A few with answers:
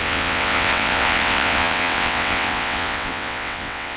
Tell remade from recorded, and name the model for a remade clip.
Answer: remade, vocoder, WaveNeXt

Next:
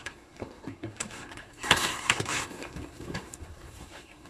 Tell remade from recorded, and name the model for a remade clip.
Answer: remade, codec, SNAC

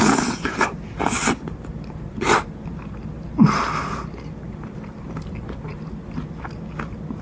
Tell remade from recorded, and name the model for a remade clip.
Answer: recorded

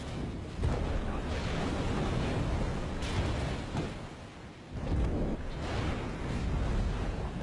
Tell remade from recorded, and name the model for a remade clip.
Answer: recorded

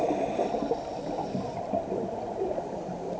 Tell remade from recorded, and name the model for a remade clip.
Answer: recorded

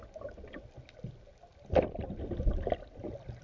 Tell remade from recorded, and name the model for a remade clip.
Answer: recorded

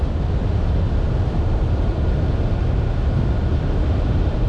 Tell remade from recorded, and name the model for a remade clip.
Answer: recorded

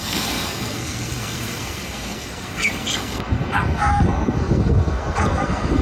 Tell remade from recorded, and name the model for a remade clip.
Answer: remade, codec, SNAC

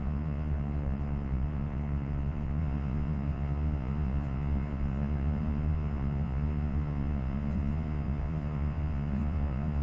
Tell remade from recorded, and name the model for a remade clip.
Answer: remade, vocoder, Vocos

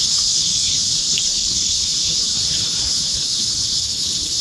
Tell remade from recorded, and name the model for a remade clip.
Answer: remade, codec, HILCodec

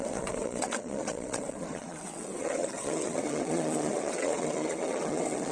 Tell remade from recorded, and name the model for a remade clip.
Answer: remade, vocoder, WaveNeXt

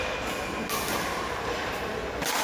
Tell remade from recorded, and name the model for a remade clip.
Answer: recorded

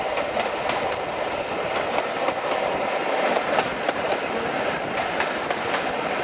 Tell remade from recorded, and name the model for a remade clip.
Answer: recorded